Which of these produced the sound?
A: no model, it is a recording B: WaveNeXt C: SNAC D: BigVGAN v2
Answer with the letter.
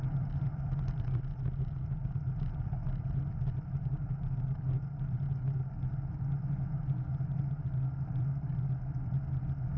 A